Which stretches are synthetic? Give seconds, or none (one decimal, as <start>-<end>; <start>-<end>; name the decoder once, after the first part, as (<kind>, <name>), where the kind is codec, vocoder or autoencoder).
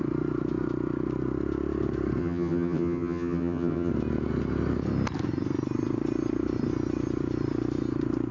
2.2-3.9 (vocoder, HiFi-GAN)